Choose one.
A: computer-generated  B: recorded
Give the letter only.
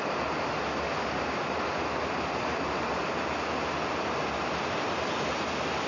B